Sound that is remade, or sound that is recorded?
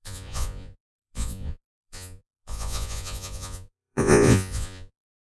remade